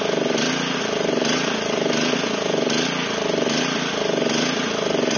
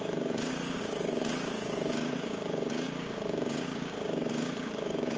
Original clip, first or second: first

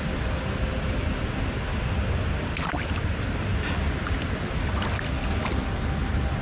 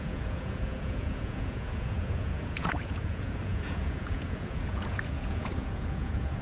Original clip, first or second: first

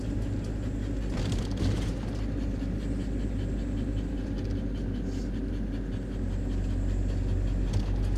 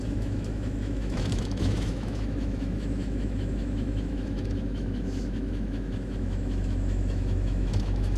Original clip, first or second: first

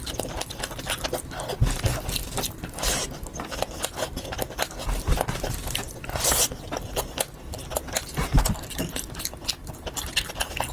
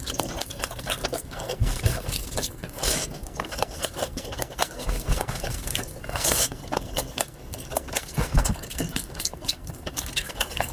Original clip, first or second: first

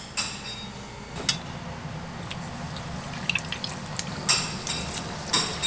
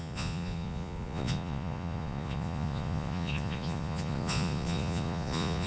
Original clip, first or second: first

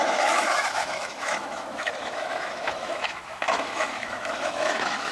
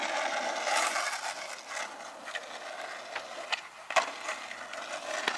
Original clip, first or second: second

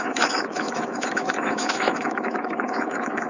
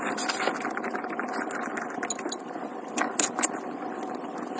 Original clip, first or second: second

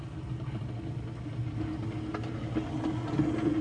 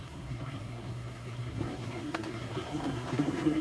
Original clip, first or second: first